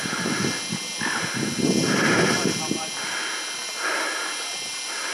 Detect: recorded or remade recorded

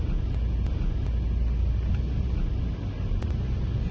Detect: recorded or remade recorded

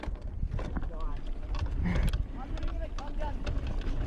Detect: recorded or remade recorded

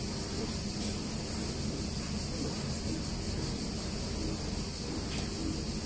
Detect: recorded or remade recorded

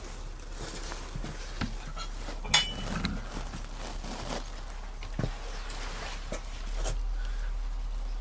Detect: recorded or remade recorded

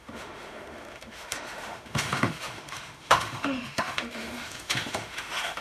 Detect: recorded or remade remade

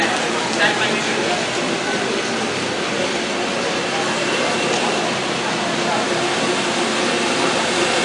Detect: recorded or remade recorded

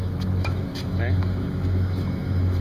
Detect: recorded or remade remade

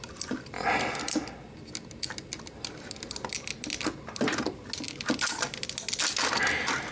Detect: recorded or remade recorded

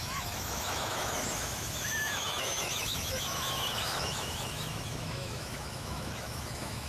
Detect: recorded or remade remade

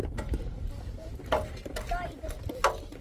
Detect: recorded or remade recorded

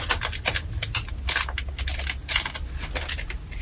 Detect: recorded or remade recorded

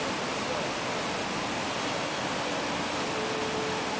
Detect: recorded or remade recorded